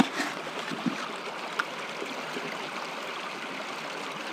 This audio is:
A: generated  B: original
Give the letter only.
B